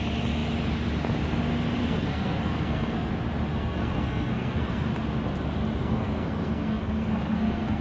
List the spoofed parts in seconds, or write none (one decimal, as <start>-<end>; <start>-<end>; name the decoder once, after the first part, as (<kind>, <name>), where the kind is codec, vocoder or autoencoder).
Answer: 1.8-3.1 (codec, SNAC); 3.5-4.9; 5.8-7.8